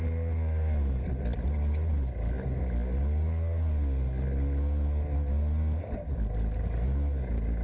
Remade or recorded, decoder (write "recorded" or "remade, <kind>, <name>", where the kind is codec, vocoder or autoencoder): recorded